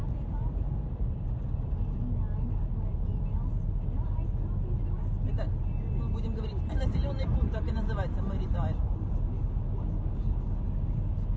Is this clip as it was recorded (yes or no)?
yes